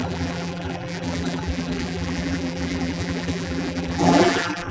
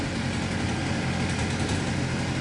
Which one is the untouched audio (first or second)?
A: second